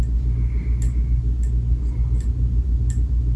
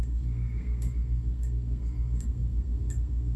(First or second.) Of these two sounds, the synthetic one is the second